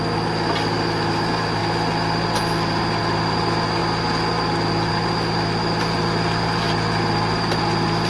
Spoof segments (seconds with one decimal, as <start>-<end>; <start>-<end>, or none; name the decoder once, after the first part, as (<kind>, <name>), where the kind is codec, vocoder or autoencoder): none